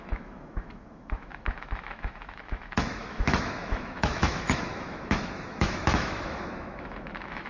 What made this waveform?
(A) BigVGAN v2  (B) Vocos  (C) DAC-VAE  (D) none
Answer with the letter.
C